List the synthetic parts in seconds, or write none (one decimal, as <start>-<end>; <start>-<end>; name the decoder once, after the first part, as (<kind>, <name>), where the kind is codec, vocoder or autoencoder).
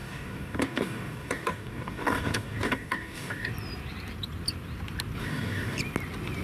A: 0.0-3.5 (codec, DAC); 5.2-5.8